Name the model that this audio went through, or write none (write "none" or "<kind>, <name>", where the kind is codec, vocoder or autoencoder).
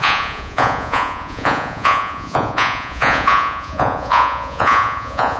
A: vocoder, Vocos